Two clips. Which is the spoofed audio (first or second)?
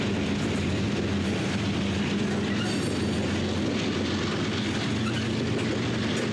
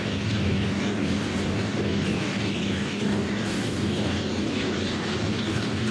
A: second